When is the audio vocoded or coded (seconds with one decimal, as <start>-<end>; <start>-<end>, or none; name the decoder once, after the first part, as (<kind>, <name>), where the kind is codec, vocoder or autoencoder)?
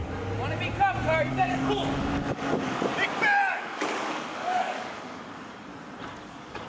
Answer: 1.3-2.9 (codec, DAC); 3.5-5.7; 6.2-6.7